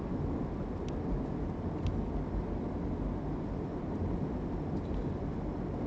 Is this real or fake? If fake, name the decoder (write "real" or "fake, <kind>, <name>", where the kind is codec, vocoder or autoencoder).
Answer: real